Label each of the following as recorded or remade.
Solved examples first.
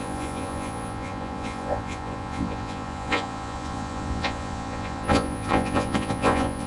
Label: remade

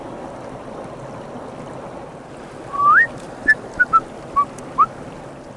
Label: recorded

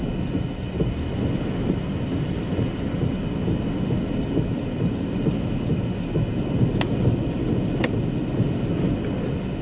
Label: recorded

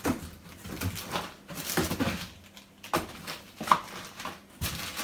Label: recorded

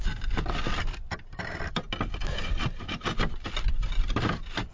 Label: recorded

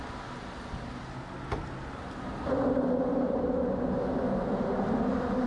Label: recorded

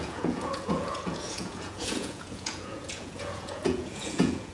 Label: remade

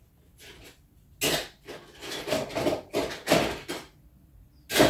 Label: recorded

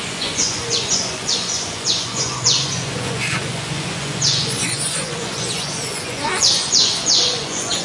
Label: remade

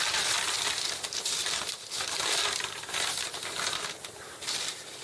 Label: recorded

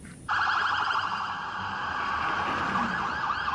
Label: recorded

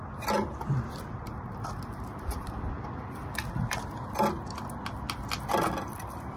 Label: recorded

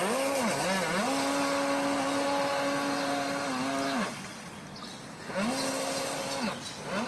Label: recorded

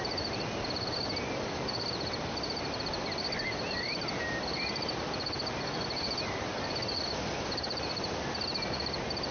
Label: recorded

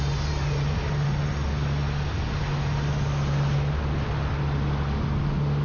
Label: recorded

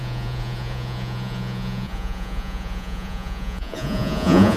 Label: remade